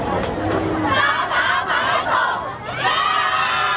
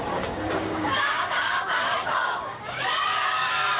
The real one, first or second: first